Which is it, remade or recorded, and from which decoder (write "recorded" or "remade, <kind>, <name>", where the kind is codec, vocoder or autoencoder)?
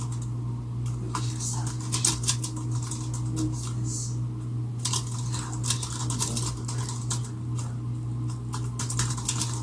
recorded